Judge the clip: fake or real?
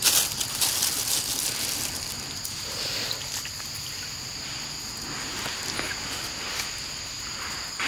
real